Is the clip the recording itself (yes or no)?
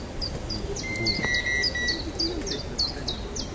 yes